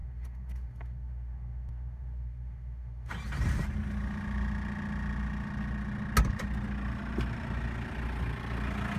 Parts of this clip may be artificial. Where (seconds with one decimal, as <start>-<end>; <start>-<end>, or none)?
0.0-3.1